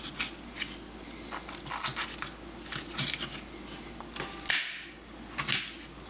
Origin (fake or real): real